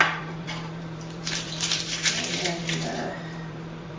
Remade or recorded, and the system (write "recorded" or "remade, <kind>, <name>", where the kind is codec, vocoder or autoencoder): remade, vocoder, BigVGAN v2